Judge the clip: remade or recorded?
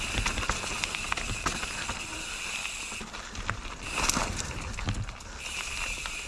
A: recorded